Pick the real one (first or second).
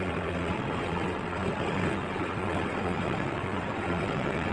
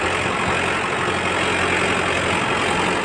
second